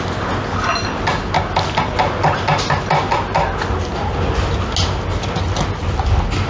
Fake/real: real